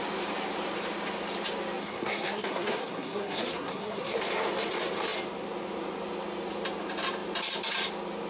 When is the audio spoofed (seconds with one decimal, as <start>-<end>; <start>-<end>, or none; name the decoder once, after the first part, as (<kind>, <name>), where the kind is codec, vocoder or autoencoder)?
1.8-4.2 (codec, SNAC)